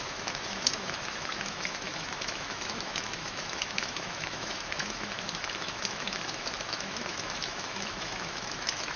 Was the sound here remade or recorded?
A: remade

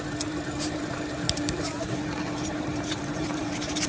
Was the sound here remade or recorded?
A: remade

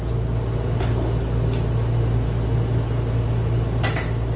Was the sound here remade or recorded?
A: recorded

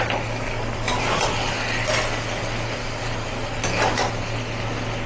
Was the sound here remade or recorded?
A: recorded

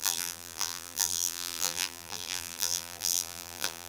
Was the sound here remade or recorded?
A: remade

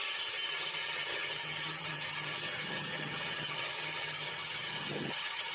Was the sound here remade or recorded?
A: remade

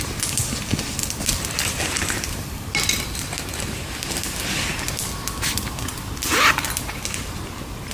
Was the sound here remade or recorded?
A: recorded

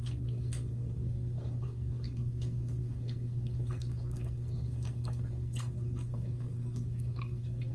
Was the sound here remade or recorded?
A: remade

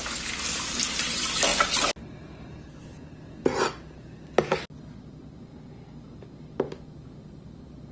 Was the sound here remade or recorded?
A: recorded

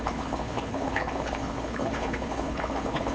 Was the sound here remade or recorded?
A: remade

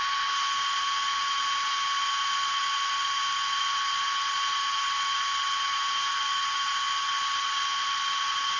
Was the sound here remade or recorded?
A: recorded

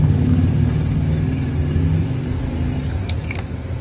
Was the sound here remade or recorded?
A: recorded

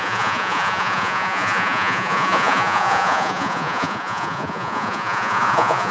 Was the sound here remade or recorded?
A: remade